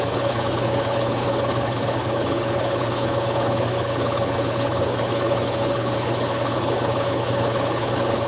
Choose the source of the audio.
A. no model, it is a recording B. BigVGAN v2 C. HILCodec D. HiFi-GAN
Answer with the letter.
C